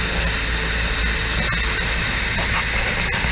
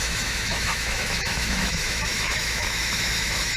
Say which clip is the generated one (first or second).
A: second